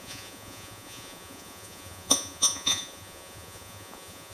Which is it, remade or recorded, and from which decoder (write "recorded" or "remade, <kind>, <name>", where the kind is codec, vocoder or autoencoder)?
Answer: remade, vocoder, Vocos